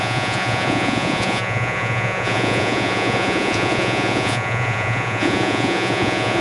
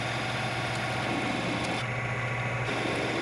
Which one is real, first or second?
second